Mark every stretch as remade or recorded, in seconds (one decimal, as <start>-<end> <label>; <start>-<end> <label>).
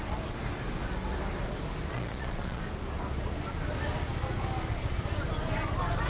0.0-1.9 recorded; 1.9-2.6 remade; 2.6-6.1 recorded